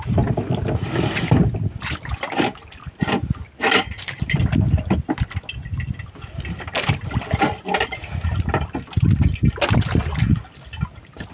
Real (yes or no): yes